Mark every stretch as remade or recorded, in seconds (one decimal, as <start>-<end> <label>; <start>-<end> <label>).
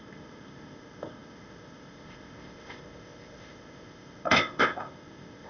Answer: 0.0-5.5 remade